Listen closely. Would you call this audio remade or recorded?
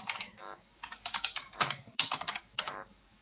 remade